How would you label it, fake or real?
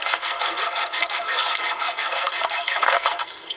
fake